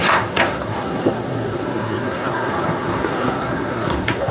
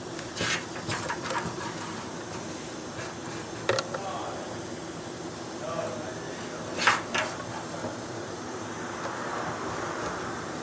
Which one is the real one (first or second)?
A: second